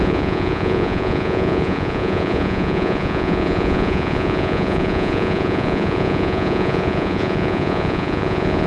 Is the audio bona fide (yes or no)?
no